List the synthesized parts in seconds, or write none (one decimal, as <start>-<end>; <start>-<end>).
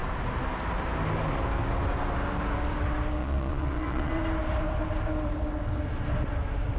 3.2-4.1